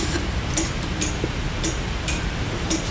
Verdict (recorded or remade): recorded